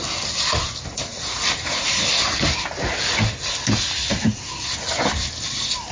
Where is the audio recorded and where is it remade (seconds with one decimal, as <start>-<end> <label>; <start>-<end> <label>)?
0.0-5.9 recorded